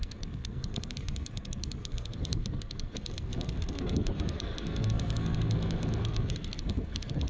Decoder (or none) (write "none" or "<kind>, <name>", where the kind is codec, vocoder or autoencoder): codec, SNAC